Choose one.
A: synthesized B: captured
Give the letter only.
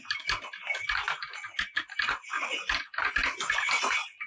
B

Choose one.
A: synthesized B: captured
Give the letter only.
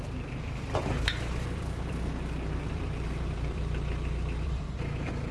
A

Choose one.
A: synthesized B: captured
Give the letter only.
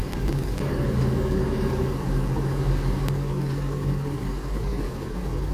A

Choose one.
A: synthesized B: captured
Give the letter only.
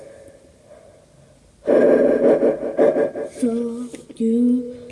B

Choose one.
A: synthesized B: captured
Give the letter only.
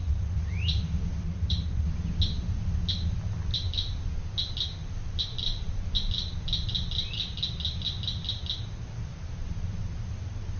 B